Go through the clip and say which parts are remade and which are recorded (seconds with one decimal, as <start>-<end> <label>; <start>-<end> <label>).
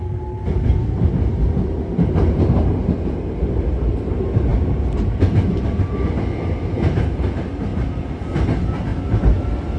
0.0-4.5 recorded; 4.5-6.1 remade; 6.1-9.8 recorded